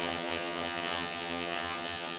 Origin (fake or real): fake